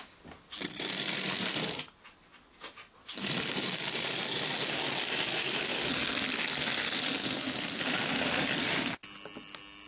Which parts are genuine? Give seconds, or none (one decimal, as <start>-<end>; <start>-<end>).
0.0-9.9